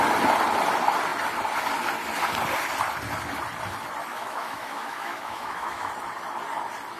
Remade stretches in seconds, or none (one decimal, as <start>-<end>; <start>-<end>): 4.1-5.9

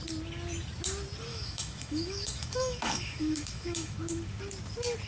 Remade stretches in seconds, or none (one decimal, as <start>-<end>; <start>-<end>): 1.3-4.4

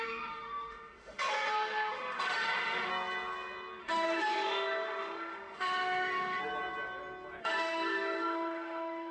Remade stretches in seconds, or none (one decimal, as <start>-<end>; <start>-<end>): 0.0-2.9; 3.8-6.4; 7.4-9.1